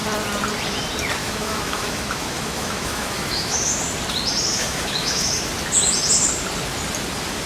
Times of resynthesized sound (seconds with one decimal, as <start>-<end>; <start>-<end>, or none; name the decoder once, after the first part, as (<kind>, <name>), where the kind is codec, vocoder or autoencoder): 1.2-3.8 (autoencoder, DAC-VAE); 4.5-5.3